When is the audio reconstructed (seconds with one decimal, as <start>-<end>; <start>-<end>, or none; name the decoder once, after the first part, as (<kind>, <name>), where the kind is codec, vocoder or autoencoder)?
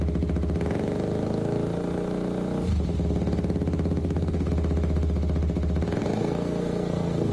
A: 4.0-4.5 (codec, SNAC); 6.0-7.3